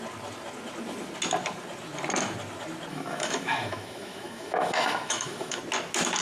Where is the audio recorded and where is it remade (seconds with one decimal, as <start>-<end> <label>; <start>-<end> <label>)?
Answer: 0.0-2.9 recorded; 2.9-5.6 remade; 5.6-6.2 recorded